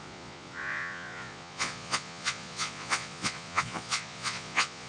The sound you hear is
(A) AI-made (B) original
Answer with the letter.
A